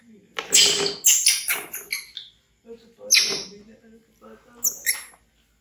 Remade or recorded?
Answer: recorded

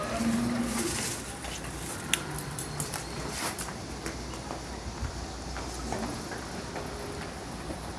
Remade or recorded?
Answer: recorded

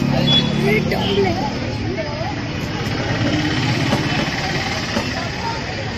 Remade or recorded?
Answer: recorded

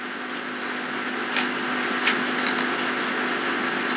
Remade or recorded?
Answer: recorded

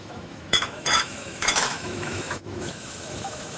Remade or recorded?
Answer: remade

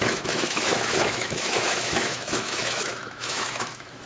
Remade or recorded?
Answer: remade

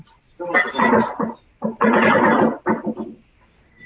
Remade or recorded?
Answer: recorded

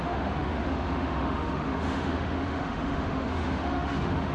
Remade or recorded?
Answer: remade